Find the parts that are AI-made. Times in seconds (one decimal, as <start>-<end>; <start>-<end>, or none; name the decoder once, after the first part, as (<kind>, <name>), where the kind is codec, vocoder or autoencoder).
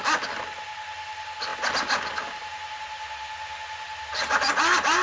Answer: none